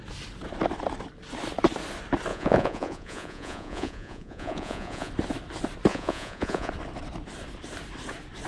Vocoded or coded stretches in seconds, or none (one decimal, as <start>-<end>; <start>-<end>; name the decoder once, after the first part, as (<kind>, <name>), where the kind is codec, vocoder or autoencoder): 2.3-5.1 (vocoder, Vocos); 5.9-6.7